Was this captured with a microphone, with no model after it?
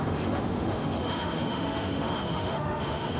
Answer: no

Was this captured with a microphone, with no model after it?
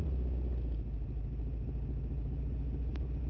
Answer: yes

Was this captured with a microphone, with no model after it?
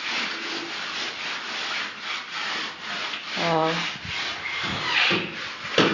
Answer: yes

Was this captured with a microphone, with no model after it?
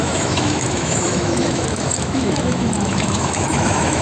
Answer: no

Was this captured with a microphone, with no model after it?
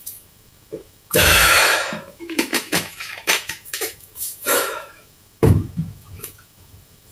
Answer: no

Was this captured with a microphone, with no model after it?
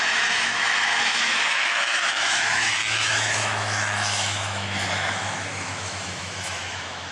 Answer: no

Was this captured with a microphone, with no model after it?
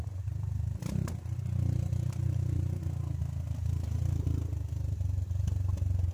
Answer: yes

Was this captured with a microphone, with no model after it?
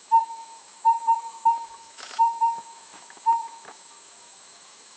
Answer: no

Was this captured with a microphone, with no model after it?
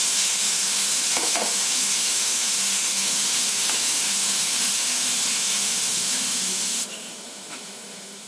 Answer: no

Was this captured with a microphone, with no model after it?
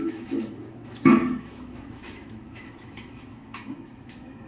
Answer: no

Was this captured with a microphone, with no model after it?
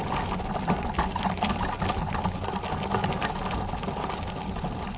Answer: yes